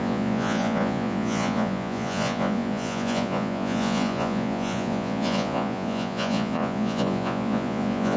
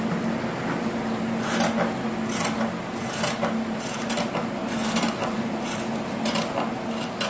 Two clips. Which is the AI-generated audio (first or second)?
first